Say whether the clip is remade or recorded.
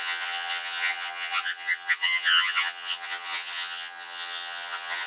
remade